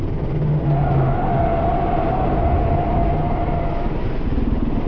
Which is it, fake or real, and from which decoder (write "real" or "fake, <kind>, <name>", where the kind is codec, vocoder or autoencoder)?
real